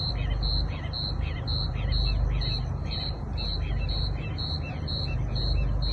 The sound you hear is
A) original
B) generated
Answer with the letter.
A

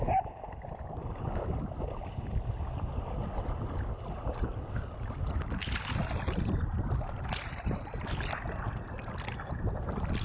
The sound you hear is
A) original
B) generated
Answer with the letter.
A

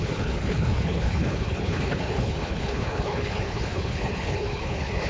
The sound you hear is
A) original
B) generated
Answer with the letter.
B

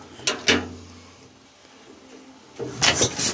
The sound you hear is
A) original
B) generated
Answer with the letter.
A